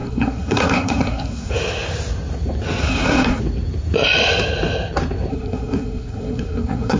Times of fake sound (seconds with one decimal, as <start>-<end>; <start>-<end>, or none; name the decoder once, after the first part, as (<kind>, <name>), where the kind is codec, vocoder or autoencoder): 0.0-1.5 (codec, SNAC); 2.8-3.4; 5.3-7.0